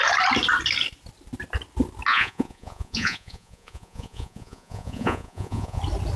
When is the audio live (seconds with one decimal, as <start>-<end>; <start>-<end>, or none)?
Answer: 0.0-2.1; 5.8-6.2